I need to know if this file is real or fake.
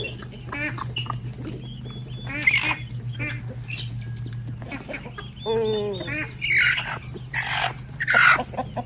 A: real